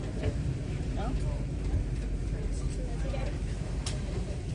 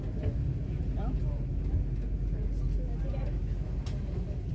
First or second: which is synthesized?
first